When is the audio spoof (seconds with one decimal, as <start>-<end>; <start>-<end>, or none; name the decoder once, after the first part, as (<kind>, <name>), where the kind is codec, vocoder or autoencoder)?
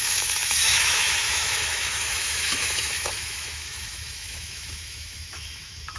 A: 0.0-6.0 (autoencoder, DAC-VAE)